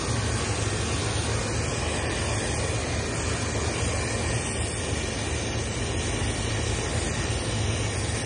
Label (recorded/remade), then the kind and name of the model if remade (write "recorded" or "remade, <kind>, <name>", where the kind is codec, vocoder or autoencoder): recorded